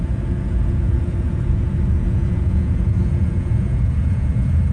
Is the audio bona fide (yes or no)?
no